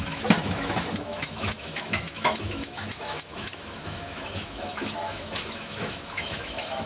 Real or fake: fake